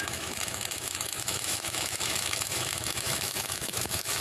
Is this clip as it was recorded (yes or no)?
no